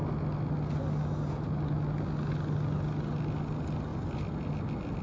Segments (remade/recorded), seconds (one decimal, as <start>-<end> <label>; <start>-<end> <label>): 0.0-5.0 recorded